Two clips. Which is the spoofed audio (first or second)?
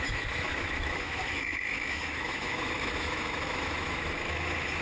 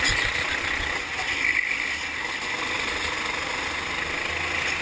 first